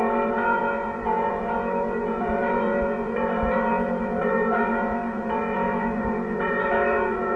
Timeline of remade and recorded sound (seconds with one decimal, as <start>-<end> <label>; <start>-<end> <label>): 0.0-7.4 remade